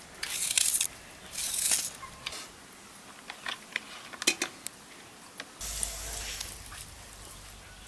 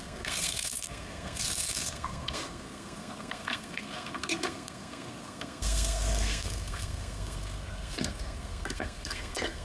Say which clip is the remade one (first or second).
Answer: second